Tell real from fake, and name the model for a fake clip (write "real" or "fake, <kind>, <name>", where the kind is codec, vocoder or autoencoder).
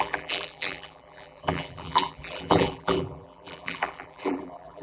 fake, vocoder, BigVGAN v2